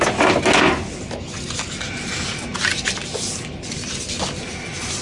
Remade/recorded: recorded